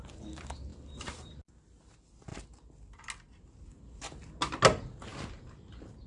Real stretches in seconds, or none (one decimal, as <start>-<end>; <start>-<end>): 0.0-6.1